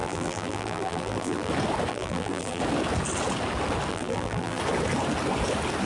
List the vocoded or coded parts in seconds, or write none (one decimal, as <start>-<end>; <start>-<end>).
0.0-1.5; 1.9-2.6; 3.9-4.6